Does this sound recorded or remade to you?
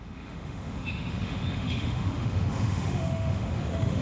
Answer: remade